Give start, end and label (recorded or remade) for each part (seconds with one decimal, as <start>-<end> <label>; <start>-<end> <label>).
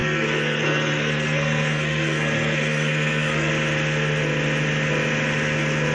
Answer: 0.0-3.5 remade; 3.5-5.9 recorded